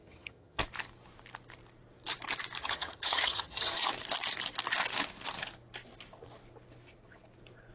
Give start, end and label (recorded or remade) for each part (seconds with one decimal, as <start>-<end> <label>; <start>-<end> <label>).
0.0-0.6 remade; 0.6-2.6 recorded; 2.6-3.8 remade; 3.8-7.7 recorded